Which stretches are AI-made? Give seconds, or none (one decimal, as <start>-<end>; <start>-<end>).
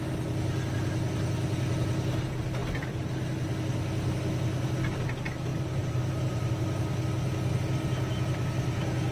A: 5.5-6.5